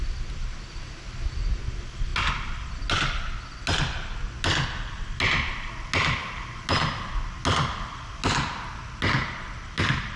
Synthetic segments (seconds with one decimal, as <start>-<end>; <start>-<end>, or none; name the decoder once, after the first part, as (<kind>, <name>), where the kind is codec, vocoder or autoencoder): none